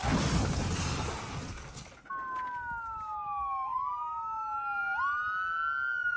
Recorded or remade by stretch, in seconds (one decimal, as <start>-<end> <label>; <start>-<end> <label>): 0.0-6.2 recorded